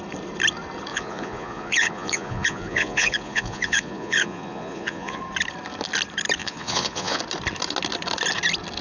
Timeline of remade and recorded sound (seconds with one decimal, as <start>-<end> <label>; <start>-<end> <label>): 0.0-0.9 recorded; 0.9-5.2 remade; 5.2-6.4 recorded; 6.4-7.2 remade; 7.2-8.8 recorded